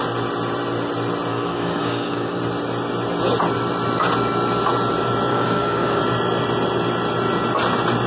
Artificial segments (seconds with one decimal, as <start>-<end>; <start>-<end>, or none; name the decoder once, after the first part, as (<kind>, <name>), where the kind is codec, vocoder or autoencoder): 1.3-2.4 (codec, DAC); 5.3-6.0